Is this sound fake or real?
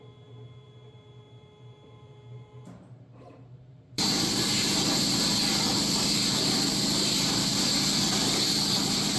fake